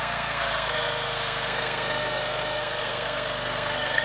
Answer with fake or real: fake